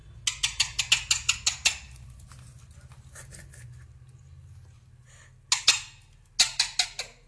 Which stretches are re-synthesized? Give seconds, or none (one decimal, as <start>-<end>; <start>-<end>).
none